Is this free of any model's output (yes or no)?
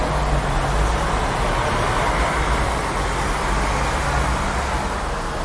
yes